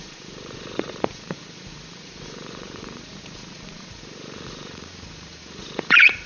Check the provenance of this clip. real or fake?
fake